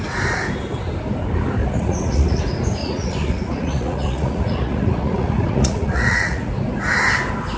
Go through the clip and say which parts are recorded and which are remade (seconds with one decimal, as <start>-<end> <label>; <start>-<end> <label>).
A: 0.0-1.6 recorded; 1.6-2.4 remade; 2.4-2.8 recorded; 2.8-6.5 remade; 6.5-7.6 recorded